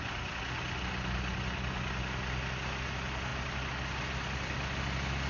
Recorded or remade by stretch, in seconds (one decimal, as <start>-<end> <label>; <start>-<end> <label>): 0.0-5.3 recorded